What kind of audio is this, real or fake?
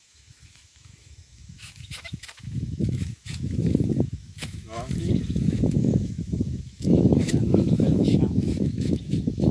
fake